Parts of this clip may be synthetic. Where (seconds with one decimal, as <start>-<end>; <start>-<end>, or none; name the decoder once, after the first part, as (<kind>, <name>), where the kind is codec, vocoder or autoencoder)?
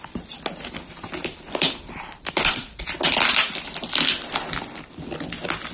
1.2-4.6 (vocoder, BigVGAN v2)